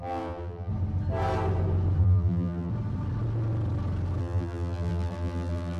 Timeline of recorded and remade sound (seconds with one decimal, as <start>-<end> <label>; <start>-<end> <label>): 0.0-0.7 remade; 0.7-2.0 recorded; 2.0-2.7 remade; 2.7-4.2 recorded; 4.2-5.8 remade